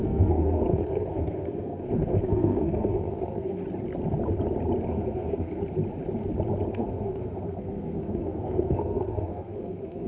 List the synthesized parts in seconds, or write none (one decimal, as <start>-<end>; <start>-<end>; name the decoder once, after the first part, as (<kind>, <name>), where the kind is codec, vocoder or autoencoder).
0.0-3.6 (codec, SNAC); 4.9-5.6; 6.7-10.1